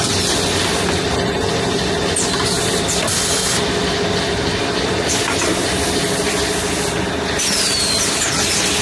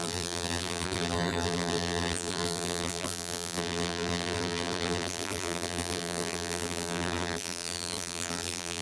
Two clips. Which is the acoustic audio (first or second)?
first